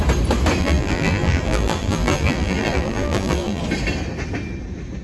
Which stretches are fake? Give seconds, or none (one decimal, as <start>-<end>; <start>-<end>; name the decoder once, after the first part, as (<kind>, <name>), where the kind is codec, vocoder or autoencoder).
0.6-3.6 (vocoder, BigVGAN v2)